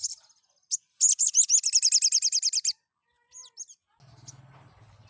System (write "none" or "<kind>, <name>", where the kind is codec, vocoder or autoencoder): none